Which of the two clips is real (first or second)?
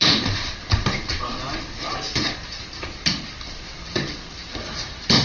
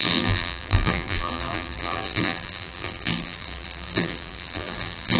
first